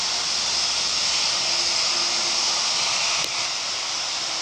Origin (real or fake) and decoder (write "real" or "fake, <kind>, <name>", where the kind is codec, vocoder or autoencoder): real